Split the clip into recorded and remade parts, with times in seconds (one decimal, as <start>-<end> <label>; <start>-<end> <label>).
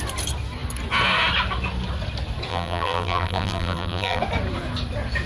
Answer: 0.0-2.5 recorded; 2.5-4.2 remade; 4.2-5.3 recorded